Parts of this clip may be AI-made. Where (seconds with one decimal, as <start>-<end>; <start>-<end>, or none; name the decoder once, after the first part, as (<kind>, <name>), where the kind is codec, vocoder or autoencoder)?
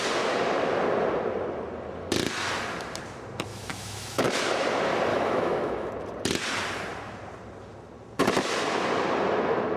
3.5-4.4 (autoencoder, DAC-VAE); 5.1-5.9